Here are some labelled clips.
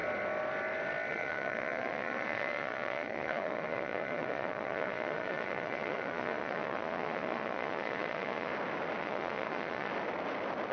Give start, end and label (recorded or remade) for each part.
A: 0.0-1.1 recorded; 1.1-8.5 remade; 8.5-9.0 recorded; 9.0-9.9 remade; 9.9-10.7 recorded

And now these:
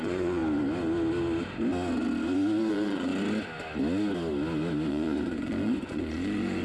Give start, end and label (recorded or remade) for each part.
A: 0.0-0.4 remade; 0.4-2.7 recorded; 2.7-3.1 remade; 3.1-4.9 recorded; 4.9-6.6 remade

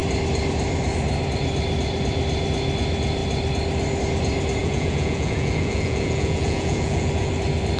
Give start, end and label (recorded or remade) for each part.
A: 0.0-4.6 recorded; 4.6-7.3 remade; 7.3-7.8 recorded

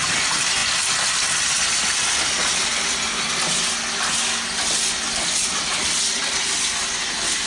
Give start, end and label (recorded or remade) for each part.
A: 0.0-7.5 recorded

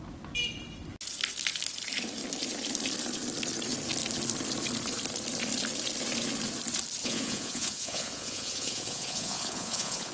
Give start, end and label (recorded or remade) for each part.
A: 0.0-7.0 recorded; 7.0-10.1 remade

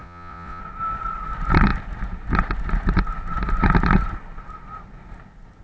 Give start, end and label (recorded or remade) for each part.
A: 0.0-0.6 remade; 0.6-5.6 recorded

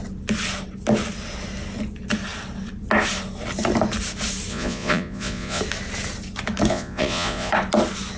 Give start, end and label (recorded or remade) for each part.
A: 0.0-4.5 recorded; 4.5-5.6 remade; 5.6-6.7 recorded; 6.7-7.5 remade; 7.5-8.2 recorded